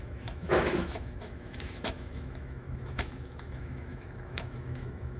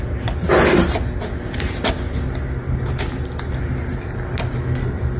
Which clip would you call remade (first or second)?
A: first